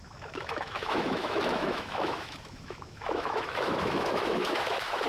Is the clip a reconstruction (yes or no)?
yes